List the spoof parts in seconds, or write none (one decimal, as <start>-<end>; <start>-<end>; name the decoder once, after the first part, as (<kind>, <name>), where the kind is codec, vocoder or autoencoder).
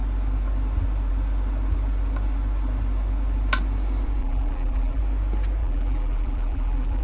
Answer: 4.2-5.0 (vocoder, BigVGAN v2); 5.6-7.0